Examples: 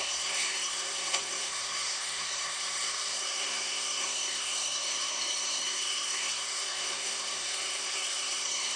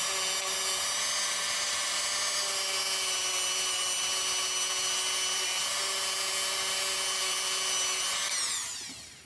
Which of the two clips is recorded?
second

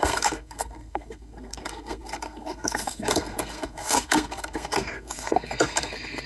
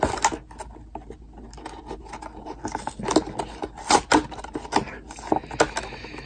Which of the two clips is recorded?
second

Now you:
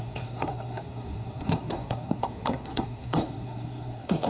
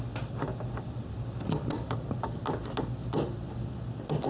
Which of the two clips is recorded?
second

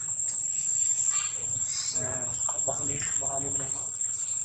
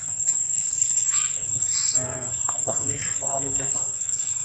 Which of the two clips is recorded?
first